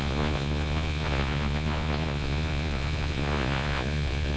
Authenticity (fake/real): fake